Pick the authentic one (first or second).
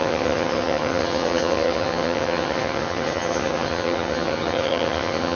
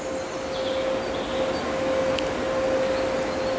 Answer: second